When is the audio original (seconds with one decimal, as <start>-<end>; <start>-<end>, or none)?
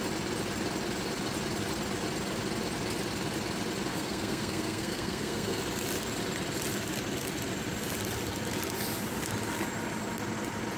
0.0-3.9; 5.6-10.8